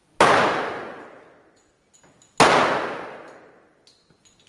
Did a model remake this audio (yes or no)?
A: no